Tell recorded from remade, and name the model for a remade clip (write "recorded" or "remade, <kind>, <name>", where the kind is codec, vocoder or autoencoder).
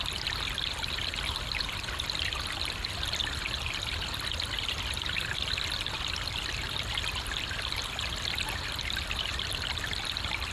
recorded